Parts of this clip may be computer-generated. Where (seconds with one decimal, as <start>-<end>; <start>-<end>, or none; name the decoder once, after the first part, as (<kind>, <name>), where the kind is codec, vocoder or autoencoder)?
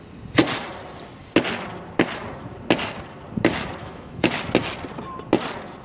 3.8-4.3 (autoencoder, DAC-VAE)